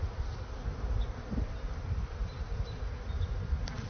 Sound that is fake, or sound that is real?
real